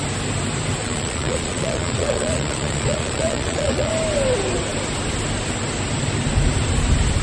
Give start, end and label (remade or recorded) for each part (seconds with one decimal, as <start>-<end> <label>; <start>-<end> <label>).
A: 0.0-0.8 recorded; 0.8-3.9 remade; 3.9-7.2 recorded